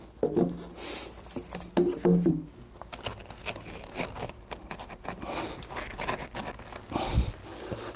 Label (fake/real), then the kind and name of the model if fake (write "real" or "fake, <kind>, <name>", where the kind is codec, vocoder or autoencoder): real